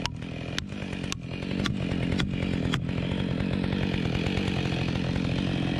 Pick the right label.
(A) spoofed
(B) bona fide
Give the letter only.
B